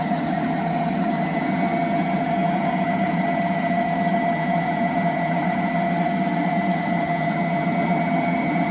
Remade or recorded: remade